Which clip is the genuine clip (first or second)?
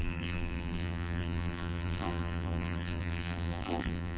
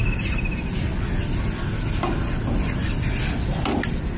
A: second